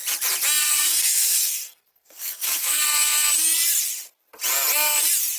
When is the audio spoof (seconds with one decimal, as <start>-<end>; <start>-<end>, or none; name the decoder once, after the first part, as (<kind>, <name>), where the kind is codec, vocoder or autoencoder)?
0.6-2.9 (codec, SNAC)